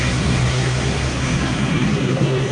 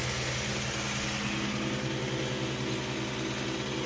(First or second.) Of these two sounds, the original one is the second